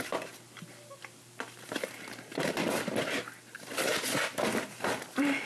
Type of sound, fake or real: fake